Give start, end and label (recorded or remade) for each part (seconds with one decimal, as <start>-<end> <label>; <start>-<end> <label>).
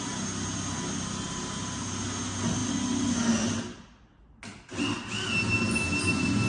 0.0-6.5 recorded